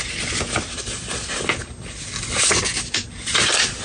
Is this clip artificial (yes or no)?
no